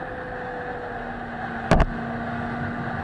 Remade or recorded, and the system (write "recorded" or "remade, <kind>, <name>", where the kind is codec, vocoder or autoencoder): recorded